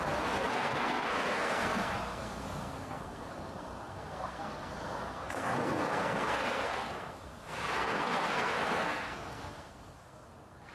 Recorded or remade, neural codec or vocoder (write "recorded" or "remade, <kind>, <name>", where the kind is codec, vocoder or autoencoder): remade, codec, SNAC